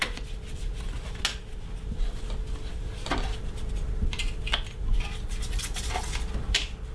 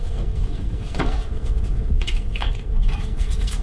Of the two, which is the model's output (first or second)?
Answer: second